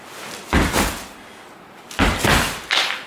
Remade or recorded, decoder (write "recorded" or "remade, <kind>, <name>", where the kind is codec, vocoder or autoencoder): recorded